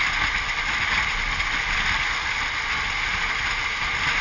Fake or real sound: real